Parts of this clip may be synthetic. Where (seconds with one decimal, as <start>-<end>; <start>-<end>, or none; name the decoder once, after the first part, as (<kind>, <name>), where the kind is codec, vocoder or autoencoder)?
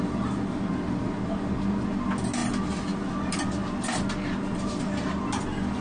none